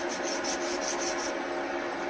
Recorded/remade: recorded